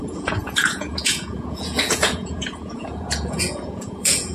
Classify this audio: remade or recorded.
remade